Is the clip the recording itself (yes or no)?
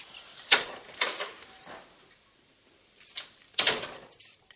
no